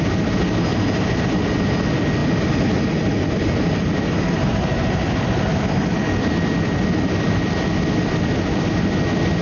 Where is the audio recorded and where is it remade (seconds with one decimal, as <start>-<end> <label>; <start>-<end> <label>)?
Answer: 0.0-9.4 recorded